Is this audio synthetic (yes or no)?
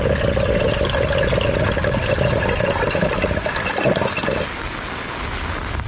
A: no